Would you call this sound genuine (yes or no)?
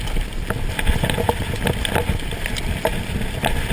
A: yes